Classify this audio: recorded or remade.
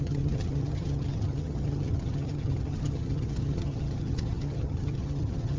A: remade